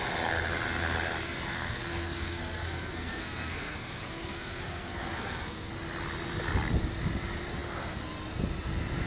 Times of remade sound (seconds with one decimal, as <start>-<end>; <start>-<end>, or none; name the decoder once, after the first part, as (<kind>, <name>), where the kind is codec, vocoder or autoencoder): 1.5-5.7 (codec, SNAC)

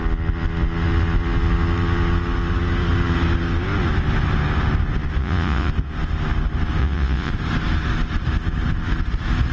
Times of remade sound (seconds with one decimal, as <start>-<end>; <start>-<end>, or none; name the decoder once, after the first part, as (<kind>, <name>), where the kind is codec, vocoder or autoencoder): 5.2-5.7 (vocoder, Vocos); 6.8-7.3

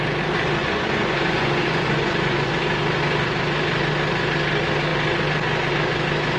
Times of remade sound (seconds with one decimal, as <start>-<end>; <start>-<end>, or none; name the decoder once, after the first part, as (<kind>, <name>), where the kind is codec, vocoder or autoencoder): 0.6-2.5 (vocoder, Vocos)

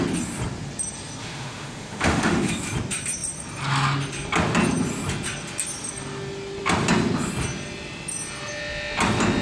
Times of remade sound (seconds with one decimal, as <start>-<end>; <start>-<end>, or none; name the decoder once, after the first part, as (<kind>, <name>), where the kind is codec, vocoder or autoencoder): 1.2-2.5 (autoencoder, DAC-VAE)